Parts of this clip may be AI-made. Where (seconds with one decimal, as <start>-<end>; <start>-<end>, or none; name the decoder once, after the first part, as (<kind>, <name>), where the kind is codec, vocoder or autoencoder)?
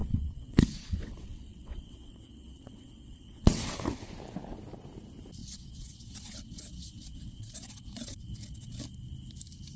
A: 0.0-4.0 (vocoder, WaveNeXt); 5.4-8.8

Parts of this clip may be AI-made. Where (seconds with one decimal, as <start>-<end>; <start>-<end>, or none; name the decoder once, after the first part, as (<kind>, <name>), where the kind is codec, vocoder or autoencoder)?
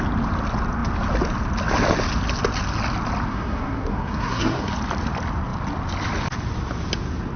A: 3.3-4.7 (codec, SNAC)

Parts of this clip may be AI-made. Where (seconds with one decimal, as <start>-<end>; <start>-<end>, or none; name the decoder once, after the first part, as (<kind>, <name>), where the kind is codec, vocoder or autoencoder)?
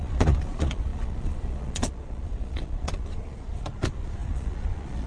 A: 0.0-5.1 (vocoder, Vocos)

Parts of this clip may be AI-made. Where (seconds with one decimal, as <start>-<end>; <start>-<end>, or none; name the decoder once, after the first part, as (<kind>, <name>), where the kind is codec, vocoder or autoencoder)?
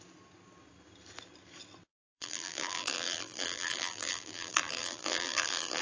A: 1.9-5.8 (vocoder, BigVGAN v2)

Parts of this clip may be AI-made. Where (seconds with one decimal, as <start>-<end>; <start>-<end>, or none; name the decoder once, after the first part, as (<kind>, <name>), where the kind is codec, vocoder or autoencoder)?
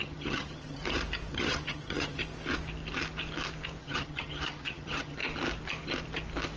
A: 0.0-0.8 (vocoder, HiFi-GAN); 1.3-2.2; 3.8-5.2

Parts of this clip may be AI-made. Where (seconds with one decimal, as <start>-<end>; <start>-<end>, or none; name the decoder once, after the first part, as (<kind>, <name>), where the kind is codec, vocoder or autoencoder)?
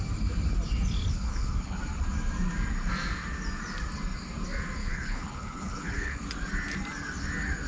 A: 1.1-1.8 (codec, HILCodec); 4.8-6.2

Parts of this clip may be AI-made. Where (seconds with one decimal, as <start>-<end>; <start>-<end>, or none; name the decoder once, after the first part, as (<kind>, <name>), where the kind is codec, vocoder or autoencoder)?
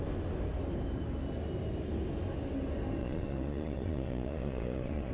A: 3.0-5.1 (vocoder, Vocos)